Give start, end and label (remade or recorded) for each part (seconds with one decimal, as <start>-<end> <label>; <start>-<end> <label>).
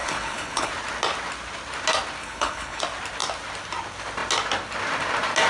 0.0-0.7 remade; 0.7-2.2 recorded; 2.2-2.8 remade; 2.8-5.5 recorded